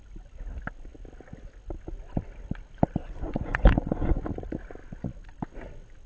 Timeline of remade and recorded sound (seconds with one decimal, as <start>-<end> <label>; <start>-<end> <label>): 0.0-3.0 recorded; 3.0-4.2 remade; 4.2-6.1 recorded